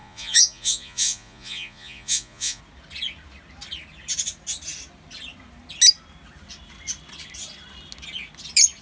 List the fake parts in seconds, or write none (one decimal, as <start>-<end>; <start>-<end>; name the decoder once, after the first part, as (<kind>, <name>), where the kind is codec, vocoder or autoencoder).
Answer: 0.0-2.6 (vocoder, Vocos)